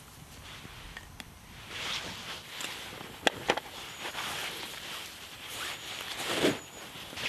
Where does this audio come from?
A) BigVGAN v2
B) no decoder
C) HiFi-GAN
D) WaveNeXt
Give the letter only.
B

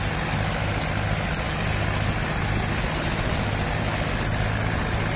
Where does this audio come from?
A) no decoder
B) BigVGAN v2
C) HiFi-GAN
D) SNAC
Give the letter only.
A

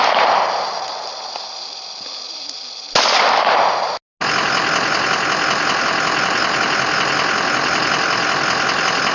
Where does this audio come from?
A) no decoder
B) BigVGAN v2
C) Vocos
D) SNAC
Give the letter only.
A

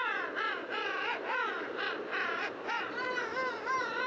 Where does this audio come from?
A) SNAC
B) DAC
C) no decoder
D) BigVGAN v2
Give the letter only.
D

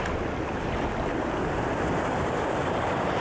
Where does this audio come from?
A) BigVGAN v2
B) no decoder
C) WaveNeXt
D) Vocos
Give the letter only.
B